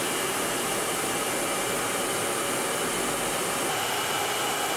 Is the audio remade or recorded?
recorded